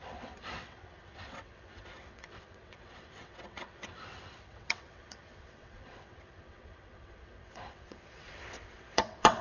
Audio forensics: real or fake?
fake